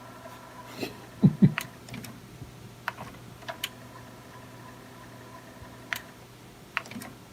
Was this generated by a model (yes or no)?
no